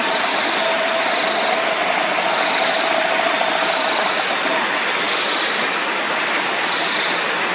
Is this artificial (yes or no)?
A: no